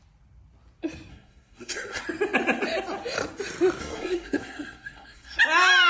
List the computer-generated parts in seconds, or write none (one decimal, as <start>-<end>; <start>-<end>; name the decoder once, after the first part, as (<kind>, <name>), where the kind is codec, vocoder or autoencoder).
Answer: 1.1-2.0 (codec, SNAC); 3.8-5.4